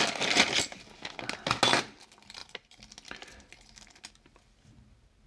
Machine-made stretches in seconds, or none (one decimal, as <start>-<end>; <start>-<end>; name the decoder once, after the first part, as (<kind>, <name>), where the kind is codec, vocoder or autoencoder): none